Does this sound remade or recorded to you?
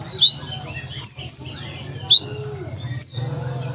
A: recorded